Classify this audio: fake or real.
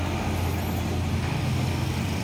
real